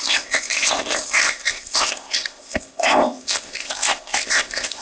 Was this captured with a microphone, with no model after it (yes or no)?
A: no